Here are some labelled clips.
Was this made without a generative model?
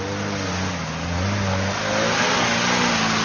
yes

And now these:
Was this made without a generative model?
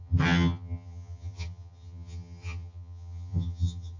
no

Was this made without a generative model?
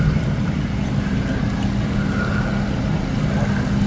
yes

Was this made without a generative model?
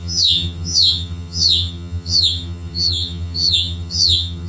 no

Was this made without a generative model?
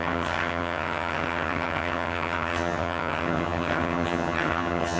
no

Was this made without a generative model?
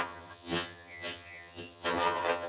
no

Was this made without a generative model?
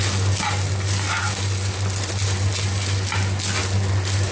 yes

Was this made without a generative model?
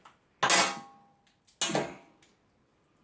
yes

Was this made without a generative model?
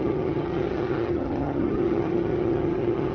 no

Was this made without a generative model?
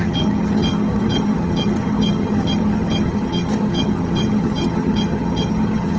no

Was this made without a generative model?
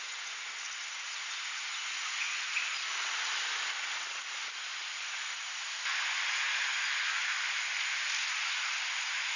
yes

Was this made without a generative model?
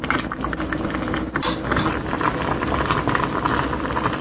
yes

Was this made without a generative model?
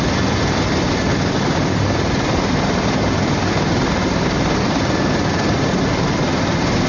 yes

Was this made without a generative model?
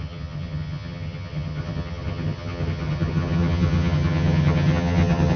no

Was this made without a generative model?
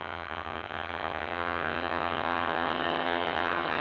no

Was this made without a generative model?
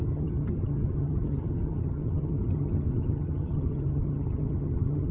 no